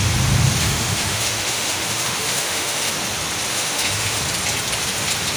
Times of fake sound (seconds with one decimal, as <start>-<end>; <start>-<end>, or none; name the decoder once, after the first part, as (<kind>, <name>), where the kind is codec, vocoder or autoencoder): 0.6-2.9 (autoencoder, DAC-VAE); 3.5-4.2